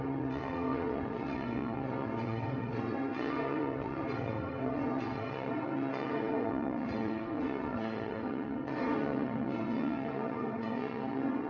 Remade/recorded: remade